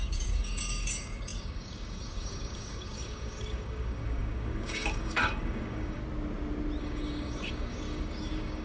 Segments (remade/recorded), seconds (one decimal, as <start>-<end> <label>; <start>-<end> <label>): 0.0-6.0 remade; 6.0-6.8 recorded; 6.8-8.6 remade